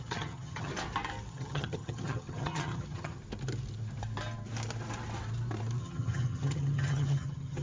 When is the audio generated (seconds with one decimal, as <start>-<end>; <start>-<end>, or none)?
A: 0.0-0.7; 1.3-3.2; 5.8-7.6